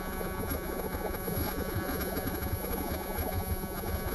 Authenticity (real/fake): fake